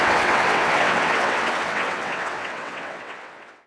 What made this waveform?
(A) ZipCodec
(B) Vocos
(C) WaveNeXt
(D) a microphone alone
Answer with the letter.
C